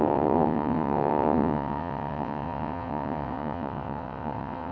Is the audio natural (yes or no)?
no